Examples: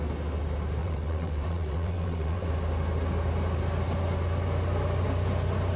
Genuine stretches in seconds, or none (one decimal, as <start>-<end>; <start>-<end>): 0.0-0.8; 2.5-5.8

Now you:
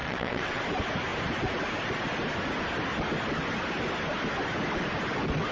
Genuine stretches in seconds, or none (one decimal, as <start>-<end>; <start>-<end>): 0.6-5.5

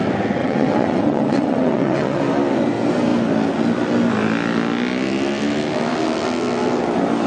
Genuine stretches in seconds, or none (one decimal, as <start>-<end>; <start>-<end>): 0.0-0.4; 2.2-7.3

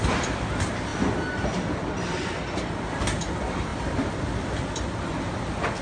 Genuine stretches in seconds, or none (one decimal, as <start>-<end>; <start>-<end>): 0.0-5.8

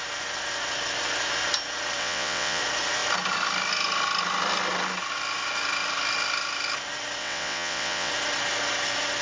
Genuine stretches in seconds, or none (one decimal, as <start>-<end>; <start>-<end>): 0.0-2.0; 2.6-7.2; 8.1-9.2

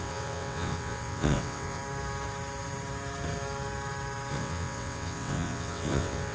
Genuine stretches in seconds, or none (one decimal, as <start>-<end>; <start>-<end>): 1.8-4.3